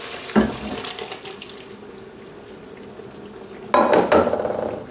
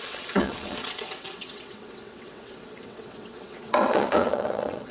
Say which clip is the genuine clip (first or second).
first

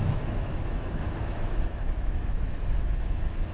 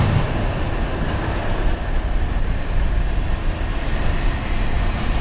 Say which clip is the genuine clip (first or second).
second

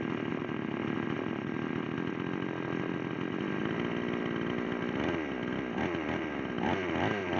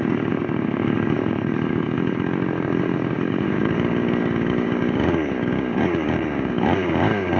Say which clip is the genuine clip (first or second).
first